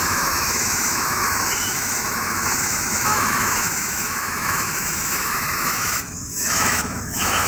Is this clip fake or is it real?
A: fake